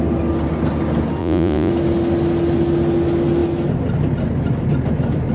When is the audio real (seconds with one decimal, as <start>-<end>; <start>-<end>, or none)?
0.0-1.2; 1.7-5.3